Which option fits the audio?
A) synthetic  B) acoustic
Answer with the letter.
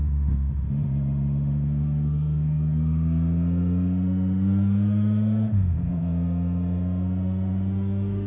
A